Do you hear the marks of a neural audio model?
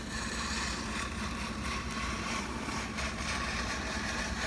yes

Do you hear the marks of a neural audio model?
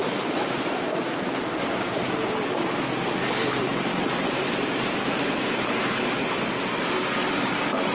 yes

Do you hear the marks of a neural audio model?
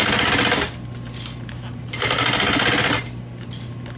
no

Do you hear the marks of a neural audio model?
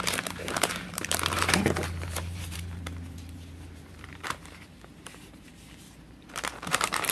yes